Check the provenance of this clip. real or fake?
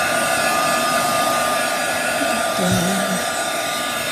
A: fake